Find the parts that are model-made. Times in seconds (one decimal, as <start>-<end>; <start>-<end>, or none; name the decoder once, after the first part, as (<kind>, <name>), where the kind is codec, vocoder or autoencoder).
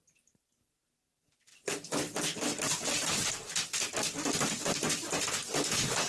none